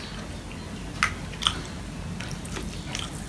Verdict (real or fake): real